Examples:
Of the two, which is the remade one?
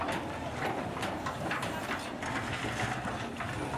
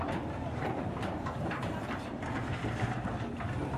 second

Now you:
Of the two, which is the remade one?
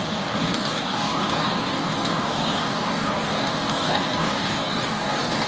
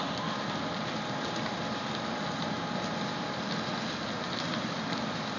first